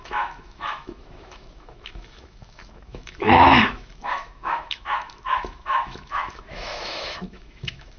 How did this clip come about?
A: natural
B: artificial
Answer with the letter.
B